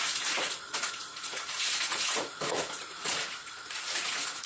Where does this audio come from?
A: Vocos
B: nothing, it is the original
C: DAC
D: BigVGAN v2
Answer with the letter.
A